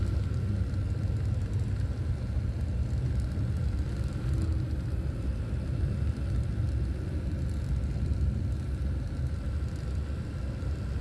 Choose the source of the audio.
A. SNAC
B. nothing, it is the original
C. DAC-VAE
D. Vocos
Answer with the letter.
B